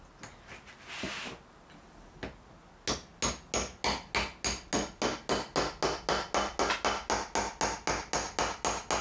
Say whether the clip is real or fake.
real